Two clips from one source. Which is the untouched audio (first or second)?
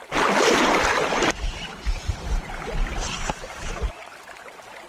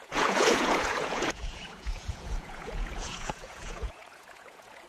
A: first